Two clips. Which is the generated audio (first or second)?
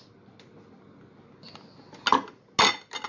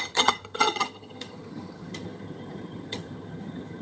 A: second